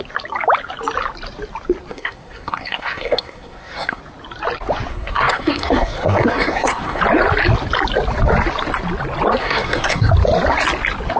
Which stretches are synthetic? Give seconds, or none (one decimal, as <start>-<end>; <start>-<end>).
1.9-4.0; 4.9-7.0; 9.4-10.1